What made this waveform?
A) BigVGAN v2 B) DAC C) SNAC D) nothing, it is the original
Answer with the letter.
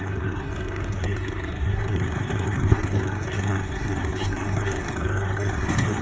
C